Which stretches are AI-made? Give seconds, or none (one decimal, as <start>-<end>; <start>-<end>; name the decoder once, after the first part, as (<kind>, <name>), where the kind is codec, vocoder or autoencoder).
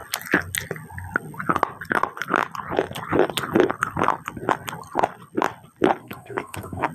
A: 6.0-6.9 (codec, SNAC)